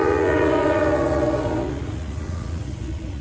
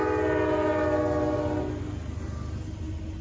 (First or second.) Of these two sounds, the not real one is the first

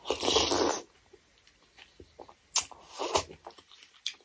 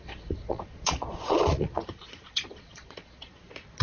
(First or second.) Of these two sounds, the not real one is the second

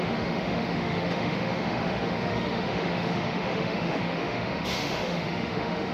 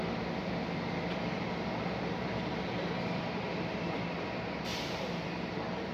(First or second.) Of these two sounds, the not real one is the first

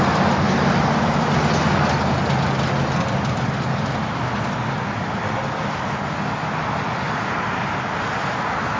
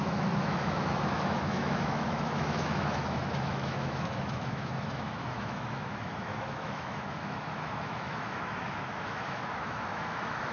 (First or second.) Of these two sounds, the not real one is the second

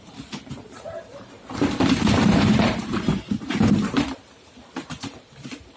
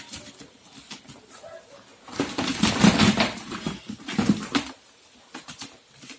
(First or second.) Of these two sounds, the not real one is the first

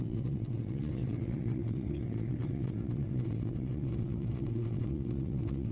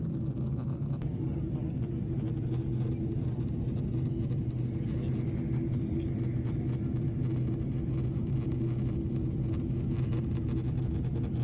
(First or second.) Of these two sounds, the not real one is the first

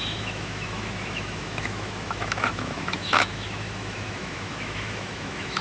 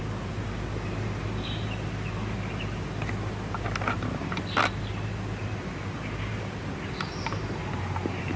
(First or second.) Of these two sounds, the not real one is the first